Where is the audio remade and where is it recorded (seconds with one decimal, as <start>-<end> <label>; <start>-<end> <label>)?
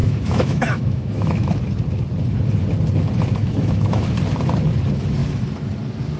0.0-1.5 remade; 1.5-3.4 recorded; 3.4-4.0 remade; 4.0-6.2 recorded